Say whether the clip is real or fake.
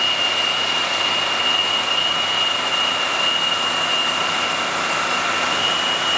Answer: real